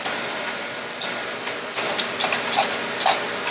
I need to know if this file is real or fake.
real